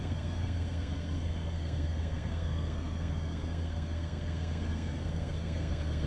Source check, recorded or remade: remade